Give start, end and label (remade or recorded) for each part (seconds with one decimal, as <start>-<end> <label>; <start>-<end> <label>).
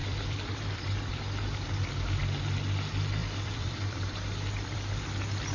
0.0-1.1 remade; 1.1-3.2 recorded; 3.2-5.0 remade; 5.0-5.5 recorded